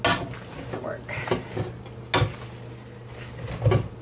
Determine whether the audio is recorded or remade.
recorded